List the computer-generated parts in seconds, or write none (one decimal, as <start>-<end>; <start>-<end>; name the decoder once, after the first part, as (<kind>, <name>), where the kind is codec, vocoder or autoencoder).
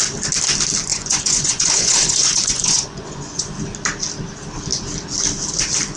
0.9-3.5 (vocoder, Vocos)